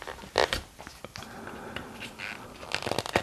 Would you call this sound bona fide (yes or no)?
yes